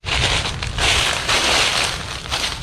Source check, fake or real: real